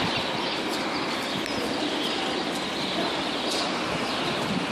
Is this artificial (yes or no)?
no